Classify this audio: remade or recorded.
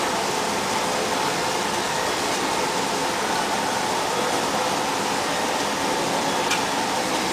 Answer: recorded